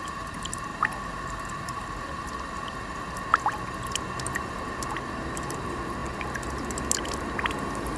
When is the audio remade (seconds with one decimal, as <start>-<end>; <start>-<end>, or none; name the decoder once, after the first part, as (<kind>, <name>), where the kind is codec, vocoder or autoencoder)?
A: 0.7-2.0 (vocoder, BigVGAN v2)